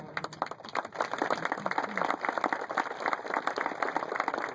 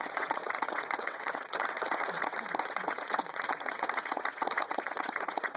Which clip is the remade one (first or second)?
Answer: second